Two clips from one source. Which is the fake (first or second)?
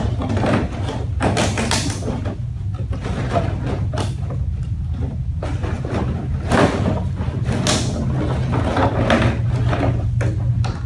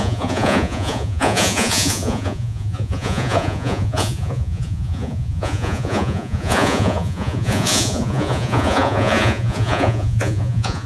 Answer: second